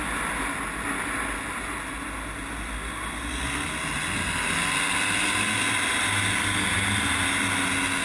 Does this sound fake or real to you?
real